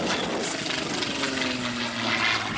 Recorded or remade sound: recorded